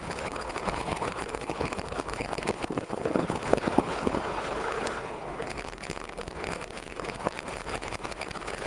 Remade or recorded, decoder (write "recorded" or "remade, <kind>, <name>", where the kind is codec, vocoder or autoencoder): remade, codec, HILCodec